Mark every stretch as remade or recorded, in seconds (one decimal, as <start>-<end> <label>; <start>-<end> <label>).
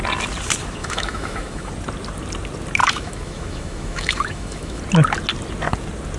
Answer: 0.0-0.8 recorded; 0.8-1.7 remade; 1.7-2.8 recorded; 2.8-4.8 remade; 4.8-6.2 recorded